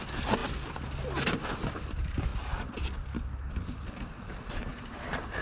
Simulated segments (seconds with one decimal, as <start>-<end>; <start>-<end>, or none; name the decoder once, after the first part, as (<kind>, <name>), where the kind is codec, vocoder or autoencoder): 0.0-0.4 (vocoder, BigVGAN v2); 1.3-2.3; 3.5-5.4